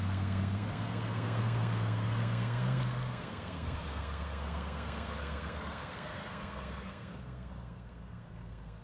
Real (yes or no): no